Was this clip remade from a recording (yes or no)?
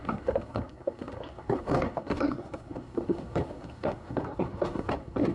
yes